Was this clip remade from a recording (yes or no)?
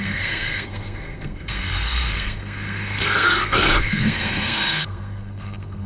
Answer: yes